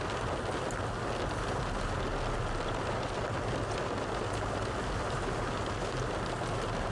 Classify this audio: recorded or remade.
recorded